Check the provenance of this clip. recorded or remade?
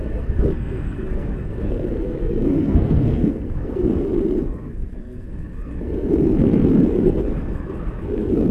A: remade